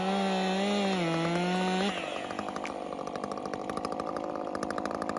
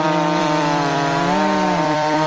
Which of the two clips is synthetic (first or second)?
second